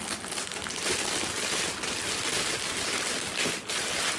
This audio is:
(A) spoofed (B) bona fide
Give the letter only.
B